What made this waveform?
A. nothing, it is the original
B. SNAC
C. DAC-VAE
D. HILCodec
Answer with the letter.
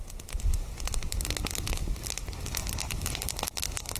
A